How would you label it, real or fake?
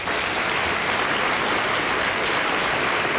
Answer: real